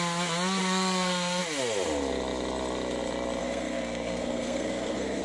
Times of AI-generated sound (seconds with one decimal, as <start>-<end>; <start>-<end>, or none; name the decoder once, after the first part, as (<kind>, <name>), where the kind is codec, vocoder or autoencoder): 0.6-1.4 (codec, SNAC); 3.4-5.2